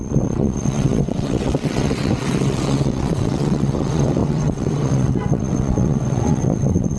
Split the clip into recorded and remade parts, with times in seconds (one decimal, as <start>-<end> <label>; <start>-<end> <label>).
0.0-7.0 remade